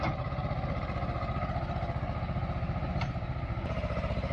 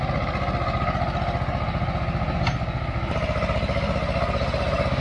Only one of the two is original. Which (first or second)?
second